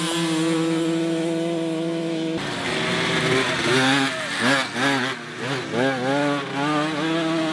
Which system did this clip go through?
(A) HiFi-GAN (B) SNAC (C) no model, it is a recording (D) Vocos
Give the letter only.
C